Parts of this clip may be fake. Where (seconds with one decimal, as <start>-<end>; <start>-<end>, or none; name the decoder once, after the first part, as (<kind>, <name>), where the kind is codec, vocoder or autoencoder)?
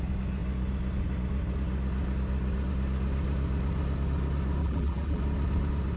4.6-5.2 (vocoder, BigVGAN v2)